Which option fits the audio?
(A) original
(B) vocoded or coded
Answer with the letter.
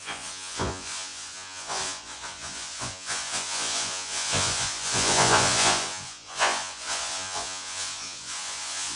B